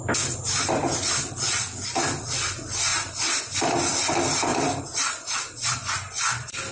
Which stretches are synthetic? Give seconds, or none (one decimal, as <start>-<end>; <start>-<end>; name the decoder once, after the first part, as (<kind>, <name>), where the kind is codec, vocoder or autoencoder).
2.9-4.1 (vocoder, BigVGAN v2); 4.5-5.4

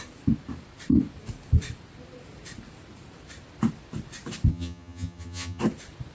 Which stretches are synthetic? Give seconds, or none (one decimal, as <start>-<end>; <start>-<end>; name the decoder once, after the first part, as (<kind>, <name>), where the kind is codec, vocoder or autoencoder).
4.5-5.6 (vocoder, HiFi-GAN)

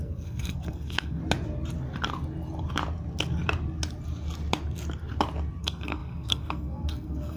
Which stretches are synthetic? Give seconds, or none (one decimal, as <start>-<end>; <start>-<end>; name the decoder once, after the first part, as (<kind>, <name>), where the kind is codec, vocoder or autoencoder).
0.0-1.2 (codec, SNAC); 5.6-7.4

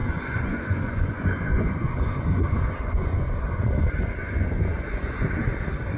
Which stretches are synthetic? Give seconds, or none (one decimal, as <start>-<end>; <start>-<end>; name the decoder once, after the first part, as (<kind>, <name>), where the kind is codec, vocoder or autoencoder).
0.0-3.6 (vocoder, Vocos); 4.2-5.3

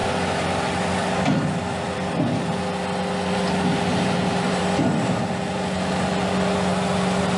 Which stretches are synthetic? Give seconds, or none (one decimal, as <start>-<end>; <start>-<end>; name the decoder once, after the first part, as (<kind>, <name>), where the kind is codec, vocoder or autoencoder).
3.9-4.6 (vocoder, BigVGAN v2)

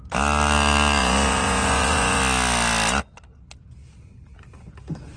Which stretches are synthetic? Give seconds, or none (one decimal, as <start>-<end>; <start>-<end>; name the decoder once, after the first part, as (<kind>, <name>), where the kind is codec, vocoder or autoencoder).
1.0-2.2 (vocoder, Vocos)